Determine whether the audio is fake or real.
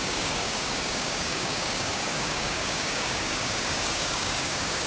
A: fake